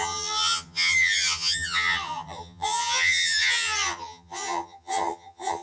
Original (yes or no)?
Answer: no